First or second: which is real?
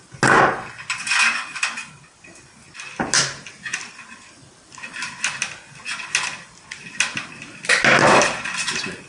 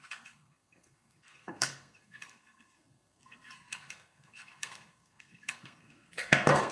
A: first